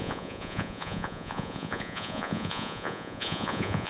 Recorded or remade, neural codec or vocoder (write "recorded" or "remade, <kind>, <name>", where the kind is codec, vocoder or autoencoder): remade, vocoder, Vocos